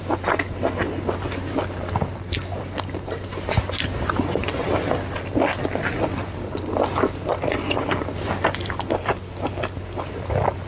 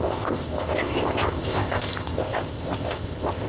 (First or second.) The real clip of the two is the first